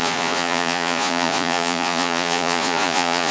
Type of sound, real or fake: fake